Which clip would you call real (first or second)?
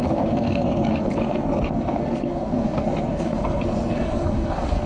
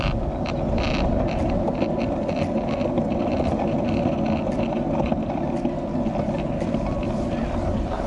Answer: second